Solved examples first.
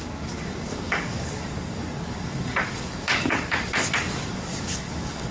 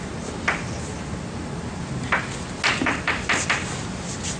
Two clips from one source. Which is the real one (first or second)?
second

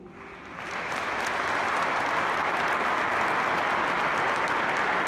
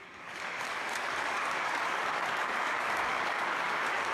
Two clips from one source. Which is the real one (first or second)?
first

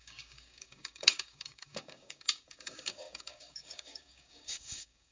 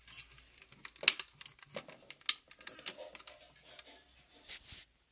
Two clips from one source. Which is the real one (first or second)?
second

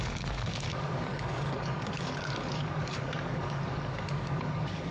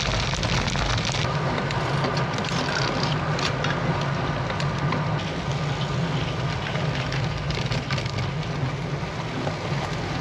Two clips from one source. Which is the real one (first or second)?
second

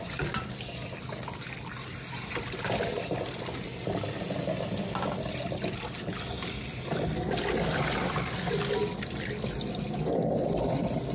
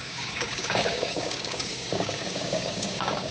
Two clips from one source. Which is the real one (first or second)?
first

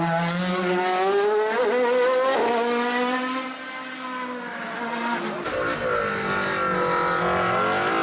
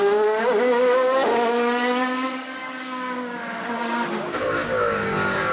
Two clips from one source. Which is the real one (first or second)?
first